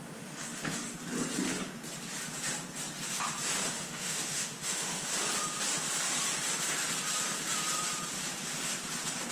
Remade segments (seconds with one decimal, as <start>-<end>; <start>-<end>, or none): 0.0-0.8; 3.7-5.1